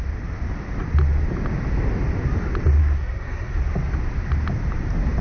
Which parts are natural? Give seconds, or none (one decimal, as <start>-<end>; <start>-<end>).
0.0-2.8; 3.6-5.2